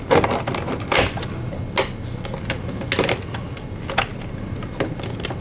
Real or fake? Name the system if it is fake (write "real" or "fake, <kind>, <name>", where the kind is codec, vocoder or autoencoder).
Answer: real